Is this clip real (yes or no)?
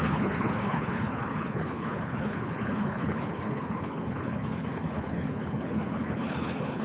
no